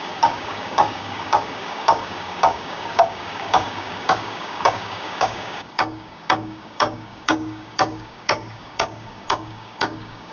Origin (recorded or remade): remade